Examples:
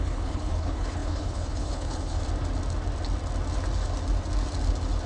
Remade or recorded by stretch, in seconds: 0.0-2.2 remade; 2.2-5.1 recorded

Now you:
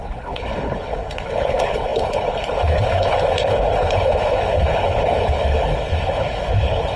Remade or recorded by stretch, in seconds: 0.0-7.0 remade

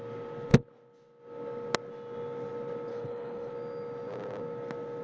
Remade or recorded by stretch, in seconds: 0.0-2.9 recorded; 2.9-3.5 remade; 3.5-5.0 recorded

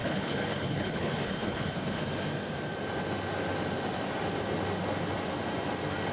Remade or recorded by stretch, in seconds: 0.0-2.0 remade; 2.0-6.1 recorded

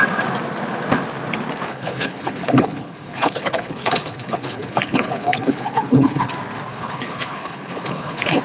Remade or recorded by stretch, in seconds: 0.0-1.7 recorded; 1.7-6.3 remade; 6.3-6.7 recorded; 6.7-8.4 remade

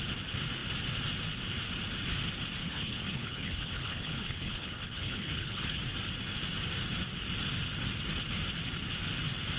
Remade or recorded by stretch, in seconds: 0.0-2.6 recorded; 2.6-5.8 remade; 5.8-9.6 recorded

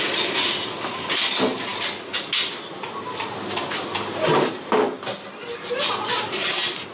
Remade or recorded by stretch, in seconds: 0.0-6.9 recorded